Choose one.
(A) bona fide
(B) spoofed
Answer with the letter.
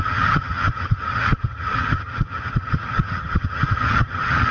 B